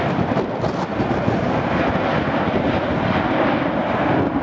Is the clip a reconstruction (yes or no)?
no